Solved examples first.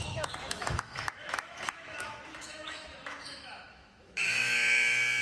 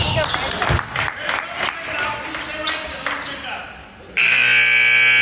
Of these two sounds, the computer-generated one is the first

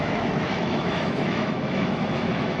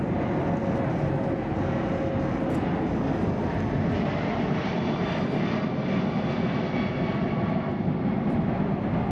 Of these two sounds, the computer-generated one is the first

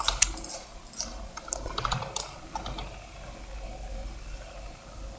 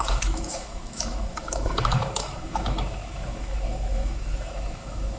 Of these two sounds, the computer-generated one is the second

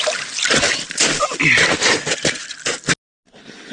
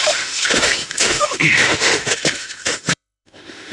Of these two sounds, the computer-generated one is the second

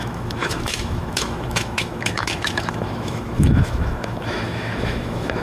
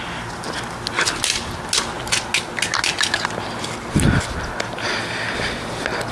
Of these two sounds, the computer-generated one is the first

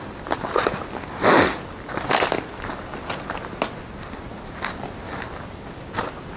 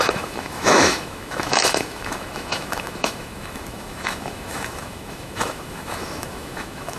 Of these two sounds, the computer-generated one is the second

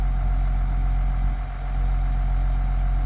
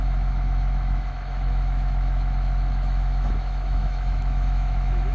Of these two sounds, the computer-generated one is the second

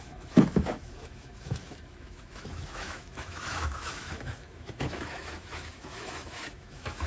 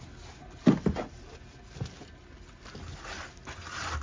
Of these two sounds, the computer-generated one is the first